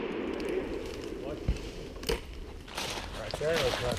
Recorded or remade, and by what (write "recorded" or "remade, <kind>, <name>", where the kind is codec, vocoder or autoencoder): recorded